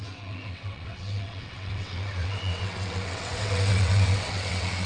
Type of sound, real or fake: fake